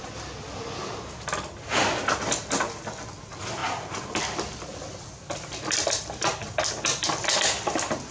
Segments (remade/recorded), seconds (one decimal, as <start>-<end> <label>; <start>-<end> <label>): 0.0-8.1 recorded